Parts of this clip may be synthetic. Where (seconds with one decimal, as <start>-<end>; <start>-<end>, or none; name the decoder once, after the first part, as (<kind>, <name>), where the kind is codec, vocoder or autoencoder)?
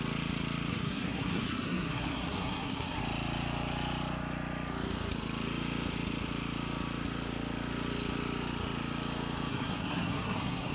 0.7-3.0 (codec, SNAC); 9.5-10.7